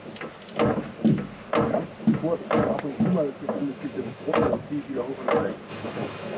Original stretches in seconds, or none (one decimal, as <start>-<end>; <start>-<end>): 0.0-3.6; 4.5-5.7